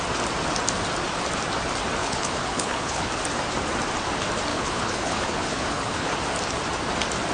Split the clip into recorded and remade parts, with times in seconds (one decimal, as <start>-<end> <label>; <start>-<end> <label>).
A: 0.0-2.0 recorded; 2.0-3.1 remade; 3.1-4.5 recorded; 4.5-6.1 remade; 6.1-7.3 recorded